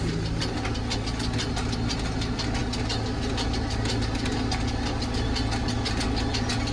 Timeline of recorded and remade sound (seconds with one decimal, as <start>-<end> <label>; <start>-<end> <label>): 0.0-6.7 recorded